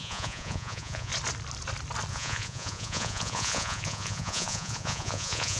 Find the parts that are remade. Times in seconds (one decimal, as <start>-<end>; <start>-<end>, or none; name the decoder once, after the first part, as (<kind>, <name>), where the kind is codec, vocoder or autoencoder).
0.0-1.1 (vocoder, Vocos); 2.1-5.6